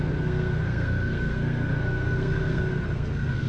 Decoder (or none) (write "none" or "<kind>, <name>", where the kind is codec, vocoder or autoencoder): codec, SNAC